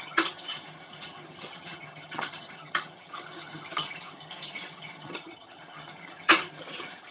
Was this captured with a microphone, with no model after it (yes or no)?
no